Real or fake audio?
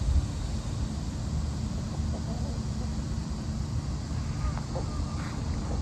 real